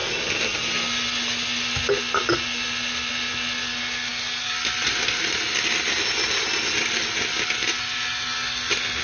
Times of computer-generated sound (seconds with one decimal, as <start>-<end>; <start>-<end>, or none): none